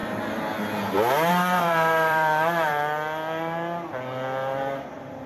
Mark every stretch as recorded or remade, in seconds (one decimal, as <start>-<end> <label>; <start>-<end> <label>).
0.0-1.3 recorded; 1.3-2.7 remade; 2.7-5.3 recorded

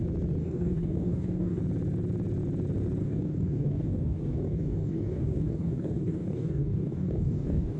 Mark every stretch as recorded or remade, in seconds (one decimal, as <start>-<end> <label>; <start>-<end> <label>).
0.0-0.4 recorded; 0.4-1.6 remade; 1.6-3.0 recorded; 3.0-7.8 remade

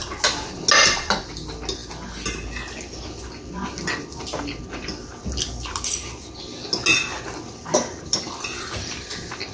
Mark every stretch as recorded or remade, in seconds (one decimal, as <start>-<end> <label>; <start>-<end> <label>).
0.0-9.5 recorded

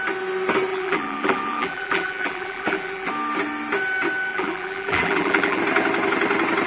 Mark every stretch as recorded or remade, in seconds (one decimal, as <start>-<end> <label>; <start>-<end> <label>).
0.0-0.7 recorded; 0.7-3.1 remade; 3.1-4.3 recorded; 4.3-5.6 remade; 5.6-6.7 recorded

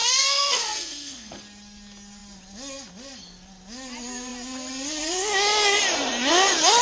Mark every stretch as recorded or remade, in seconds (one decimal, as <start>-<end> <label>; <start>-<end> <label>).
0.0-1.4 remade; 1.4-6.8 recorded

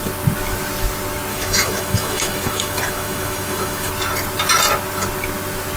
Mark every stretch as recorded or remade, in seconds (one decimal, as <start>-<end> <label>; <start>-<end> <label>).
0.0-1.3 recorded; 1.3-3.9 remade; 3.9-5.8 recorded

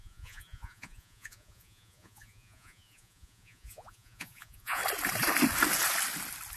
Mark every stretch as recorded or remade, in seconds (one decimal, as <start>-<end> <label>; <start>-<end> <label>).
0.0-4.8 remade; 4.8-6.6 recorded

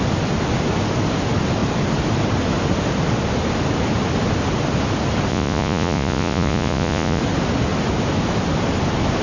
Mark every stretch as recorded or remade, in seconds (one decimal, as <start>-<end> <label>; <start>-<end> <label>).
0.0-5.3 recorded; 5.3-7.2 remade; 7.2-9.2 recorded